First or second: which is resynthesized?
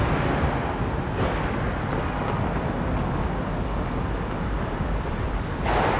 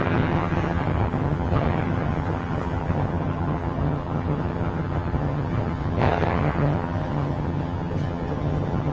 second